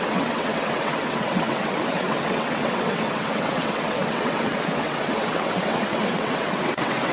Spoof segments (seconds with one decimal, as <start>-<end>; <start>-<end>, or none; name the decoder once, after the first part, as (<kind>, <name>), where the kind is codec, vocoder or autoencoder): 0.0-7.1 (vocoder, WaveNeXt)